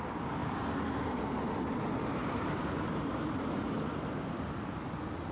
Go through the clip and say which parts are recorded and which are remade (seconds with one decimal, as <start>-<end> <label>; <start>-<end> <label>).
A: 0.0-0.4 recorded; 0.4-1.3 remade; 1.3-2.2 recorded; 2.2-4.1 remade; 4.1-5.3 recorded